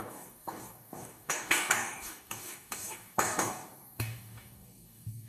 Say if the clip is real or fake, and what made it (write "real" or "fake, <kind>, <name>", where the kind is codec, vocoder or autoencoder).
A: fake, codec, DAC